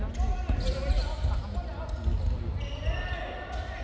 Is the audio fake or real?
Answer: real